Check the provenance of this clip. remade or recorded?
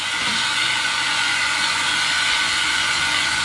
remade